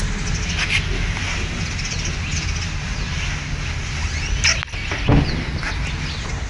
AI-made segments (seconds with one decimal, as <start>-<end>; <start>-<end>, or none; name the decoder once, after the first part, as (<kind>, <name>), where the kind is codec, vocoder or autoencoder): none

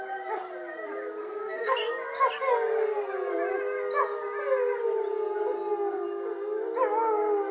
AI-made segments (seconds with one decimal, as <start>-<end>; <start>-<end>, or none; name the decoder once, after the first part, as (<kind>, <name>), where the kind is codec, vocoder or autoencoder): 1.2-1.9 (codec, SNAC)